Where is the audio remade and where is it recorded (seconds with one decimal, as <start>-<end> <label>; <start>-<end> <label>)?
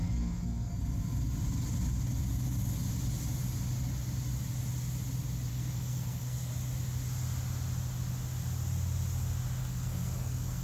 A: 0.0-0.7 remade; 0.7-5.5 recorded; 5.5-6.5 remade; 6.5-9.6 recorded; 9.6-10.6 remade